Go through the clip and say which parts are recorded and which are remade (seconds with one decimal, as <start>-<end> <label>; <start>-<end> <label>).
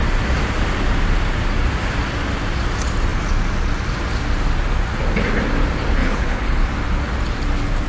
0.0-6.0 recorded; 6.0-6.6 remade; 6.6-7.9 recorded